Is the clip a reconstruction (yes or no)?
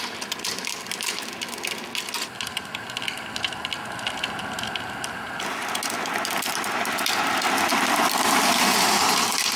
no